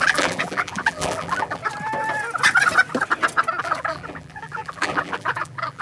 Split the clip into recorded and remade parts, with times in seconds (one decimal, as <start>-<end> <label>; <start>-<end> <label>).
0.0-1.6 remade; 1.6-3.6 recorded; 3.6-5.8 remade